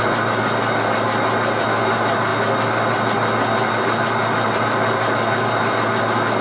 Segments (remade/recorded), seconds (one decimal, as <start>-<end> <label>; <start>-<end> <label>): 0.0-6.4 recorded

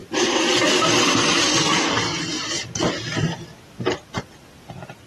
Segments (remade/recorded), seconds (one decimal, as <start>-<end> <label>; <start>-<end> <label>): 0.0-5.1 recorded

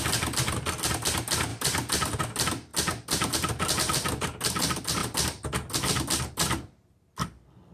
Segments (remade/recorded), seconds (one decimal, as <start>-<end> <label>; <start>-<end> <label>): 0.0-1.5 recorded; 1.5-2.2 remade; 2.2-7.7 recorded